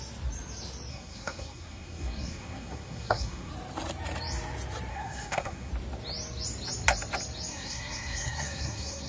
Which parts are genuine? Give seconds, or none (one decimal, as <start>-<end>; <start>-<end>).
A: 0.0-0.9; 3.5-4.9; 5.7-7.5